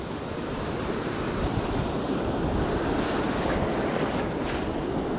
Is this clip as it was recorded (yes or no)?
yes